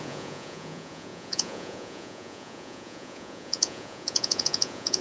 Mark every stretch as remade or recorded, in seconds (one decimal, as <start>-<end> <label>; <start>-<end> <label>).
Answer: 0.0-5.0 remade